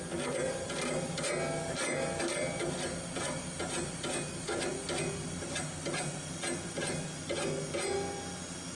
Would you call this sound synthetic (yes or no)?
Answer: no